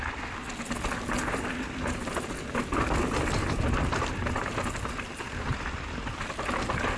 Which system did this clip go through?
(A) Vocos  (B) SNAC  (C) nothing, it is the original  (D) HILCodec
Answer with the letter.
C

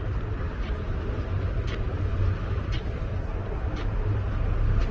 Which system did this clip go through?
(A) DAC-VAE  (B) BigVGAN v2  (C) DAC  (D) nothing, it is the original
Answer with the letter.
D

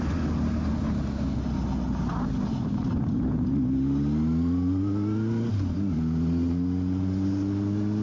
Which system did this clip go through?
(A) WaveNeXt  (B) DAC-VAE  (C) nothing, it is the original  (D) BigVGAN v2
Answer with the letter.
C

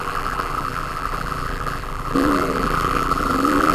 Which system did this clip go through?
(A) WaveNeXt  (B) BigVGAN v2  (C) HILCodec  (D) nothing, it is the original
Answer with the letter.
B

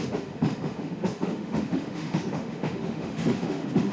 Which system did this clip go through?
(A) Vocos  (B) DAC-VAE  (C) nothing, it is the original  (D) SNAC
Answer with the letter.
B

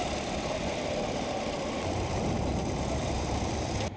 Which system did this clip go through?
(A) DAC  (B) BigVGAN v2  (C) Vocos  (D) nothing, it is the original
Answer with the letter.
D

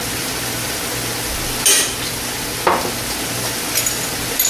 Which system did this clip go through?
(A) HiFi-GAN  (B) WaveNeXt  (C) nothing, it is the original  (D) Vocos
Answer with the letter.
C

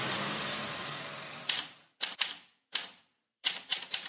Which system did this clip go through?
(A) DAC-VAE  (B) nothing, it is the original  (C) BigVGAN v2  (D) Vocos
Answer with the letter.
C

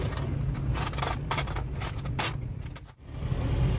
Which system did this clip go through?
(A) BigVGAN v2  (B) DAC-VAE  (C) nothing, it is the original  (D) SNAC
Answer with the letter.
C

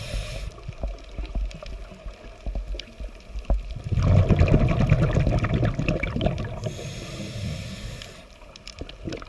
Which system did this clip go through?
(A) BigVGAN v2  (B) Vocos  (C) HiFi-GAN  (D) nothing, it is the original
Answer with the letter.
D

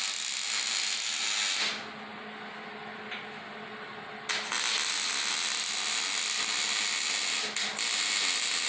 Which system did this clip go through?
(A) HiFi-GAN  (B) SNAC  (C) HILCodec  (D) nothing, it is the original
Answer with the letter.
D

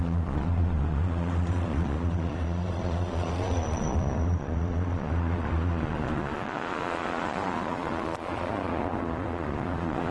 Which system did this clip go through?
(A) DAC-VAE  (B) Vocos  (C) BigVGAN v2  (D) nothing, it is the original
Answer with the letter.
B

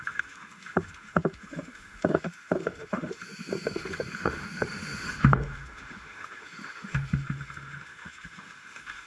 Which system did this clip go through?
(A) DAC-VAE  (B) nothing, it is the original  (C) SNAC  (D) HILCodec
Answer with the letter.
A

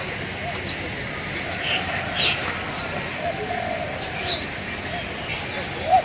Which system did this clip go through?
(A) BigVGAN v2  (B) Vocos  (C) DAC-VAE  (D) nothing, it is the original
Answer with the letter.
D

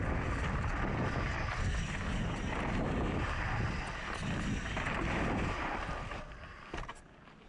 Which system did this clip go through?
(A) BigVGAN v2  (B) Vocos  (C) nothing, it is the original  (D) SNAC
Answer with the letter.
C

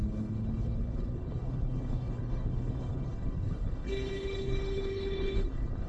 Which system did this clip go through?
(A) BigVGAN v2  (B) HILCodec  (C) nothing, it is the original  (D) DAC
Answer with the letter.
B